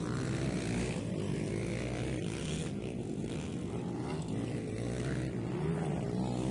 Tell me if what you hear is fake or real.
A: real